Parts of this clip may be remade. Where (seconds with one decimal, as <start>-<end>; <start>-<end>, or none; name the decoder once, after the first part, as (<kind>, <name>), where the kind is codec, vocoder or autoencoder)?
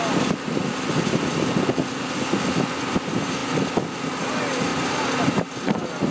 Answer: 4.7-5.5 (vocoder, BigVGAN v2)